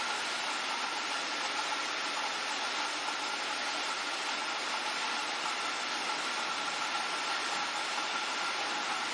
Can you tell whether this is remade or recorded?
recorded